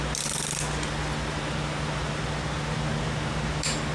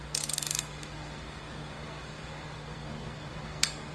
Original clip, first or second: first